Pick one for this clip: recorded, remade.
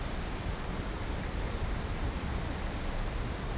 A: remade